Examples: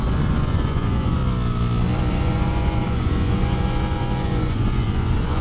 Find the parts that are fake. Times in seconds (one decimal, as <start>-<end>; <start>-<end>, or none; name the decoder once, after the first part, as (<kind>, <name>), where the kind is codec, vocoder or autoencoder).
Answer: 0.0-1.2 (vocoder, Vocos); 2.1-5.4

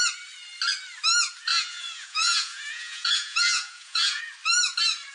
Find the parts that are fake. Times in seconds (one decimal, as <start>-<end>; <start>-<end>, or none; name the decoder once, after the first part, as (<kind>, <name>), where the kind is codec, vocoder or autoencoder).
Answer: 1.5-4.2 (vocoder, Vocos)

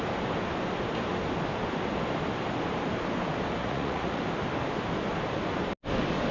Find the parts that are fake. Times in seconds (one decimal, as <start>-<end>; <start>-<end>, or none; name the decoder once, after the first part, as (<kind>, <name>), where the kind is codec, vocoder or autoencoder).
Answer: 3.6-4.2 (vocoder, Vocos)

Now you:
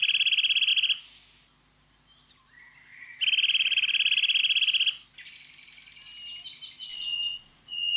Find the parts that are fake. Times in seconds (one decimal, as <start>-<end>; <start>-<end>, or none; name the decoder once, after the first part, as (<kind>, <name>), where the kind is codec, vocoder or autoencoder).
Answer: 6.9-8.0 (vocoder, Vocos)

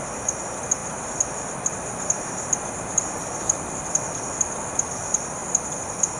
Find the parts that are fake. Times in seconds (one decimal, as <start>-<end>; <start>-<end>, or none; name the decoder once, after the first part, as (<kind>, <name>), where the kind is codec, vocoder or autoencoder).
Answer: none

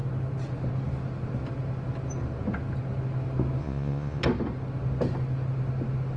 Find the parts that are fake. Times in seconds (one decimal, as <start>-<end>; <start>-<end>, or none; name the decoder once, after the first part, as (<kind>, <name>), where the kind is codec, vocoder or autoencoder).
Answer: 3.6-4.2 (vocoder, Vocos)

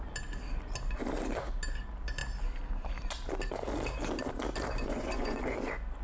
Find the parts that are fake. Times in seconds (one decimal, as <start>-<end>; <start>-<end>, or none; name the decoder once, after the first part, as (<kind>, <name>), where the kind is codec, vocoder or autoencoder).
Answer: 4.8-5.4 (vocoder, Vocos)